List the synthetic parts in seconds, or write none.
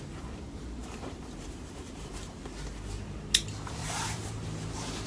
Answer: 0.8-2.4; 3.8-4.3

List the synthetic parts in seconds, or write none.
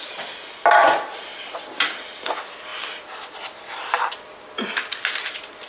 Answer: none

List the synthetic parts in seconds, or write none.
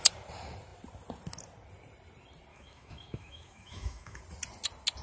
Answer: 2.5-4.2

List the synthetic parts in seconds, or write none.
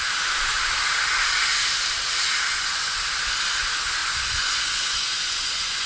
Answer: 2.5-3.0; 4.0-5.9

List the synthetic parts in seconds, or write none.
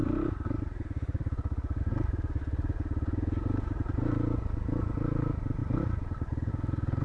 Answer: 0.0-1.8; 5.6-6.5